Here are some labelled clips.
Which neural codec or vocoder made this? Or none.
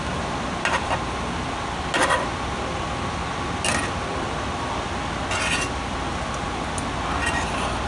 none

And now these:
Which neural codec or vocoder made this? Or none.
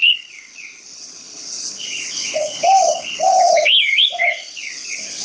codec, HILCodec